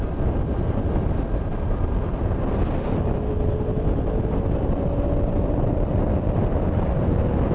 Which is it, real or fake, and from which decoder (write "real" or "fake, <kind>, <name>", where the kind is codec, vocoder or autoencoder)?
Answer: real